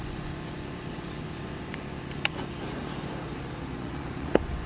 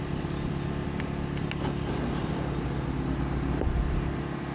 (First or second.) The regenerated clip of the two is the first